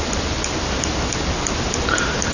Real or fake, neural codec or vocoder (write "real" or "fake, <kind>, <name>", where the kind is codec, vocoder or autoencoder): real